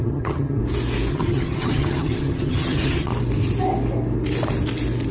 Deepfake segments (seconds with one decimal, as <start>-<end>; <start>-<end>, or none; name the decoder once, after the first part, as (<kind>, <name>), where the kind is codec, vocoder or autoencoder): 0.0-0.6 (vocoder, HiFi-GAN); 1.1-3.1